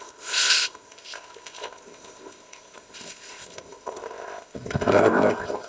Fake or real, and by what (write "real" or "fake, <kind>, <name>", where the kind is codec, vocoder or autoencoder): fake, codec, ZipCodec